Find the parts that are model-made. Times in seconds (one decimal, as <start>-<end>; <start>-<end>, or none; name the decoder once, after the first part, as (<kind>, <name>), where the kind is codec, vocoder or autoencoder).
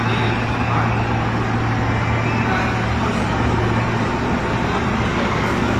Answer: 5.1-5.8 (codec, DAC)